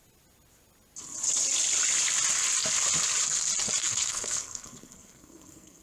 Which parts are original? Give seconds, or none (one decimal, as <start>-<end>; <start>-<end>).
0.0-3.8